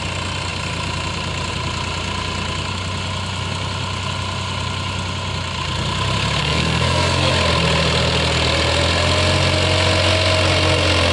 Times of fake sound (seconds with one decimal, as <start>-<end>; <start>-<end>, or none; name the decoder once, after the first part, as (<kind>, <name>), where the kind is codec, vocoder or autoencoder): 6.4-7.3 (codec, SNAC)